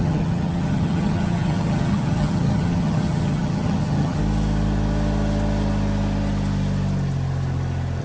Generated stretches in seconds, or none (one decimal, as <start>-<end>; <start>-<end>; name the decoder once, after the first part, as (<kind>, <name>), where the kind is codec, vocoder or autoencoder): 0.0-4.2 (vocoder, HiFi-GAN)